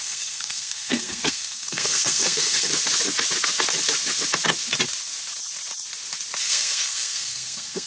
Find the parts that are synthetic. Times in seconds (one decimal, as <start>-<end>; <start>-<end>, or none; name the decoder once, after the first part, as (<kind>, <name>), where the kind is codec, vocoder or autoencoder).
0.0-2.7 (codec, SNAC); 6.4-7.9